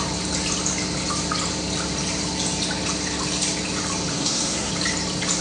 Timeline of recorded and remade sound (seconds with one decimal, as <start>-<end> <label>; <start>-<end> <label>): 0.0-4.1 recorded; 4.1-4.7 remade; 4.7-5.4 recorded